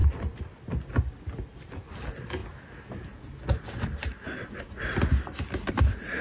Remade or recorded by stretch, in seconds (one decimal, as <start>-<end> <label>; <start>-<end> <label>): 0.0-6.2 recorded